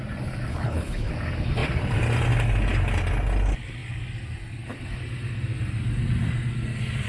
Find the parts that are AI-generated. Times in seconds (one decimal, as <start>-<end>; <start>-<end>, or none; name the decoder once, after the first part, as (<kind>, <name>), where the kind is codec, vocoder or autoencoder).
0.5-1.1 (codec, HILCodec)